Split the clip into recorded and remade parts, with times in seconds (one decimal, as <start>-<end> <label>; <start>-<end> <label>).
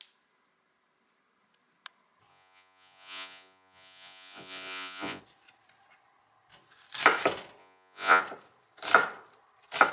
0.0-2.3 recorded; 2.3-5.2 remade; 5.2-7.6 recorded; 7.6-8.2 remade; 8.2-9.9 recorded